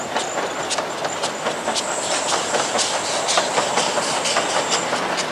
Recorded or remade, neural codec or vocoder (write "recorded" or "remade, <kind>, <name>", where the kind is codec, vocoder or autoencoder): recorded